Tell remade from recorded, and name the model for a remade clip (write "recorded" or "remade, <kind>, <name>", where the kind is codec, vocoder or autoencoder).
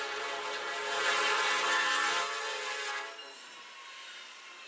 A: recorded